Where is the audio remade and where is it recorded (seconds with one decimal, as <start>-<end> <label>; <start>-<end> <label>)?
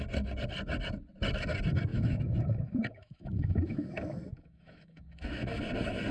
0.0-1.9 recorded; 1.9-5.6 remade; 5.6-6.1 recorded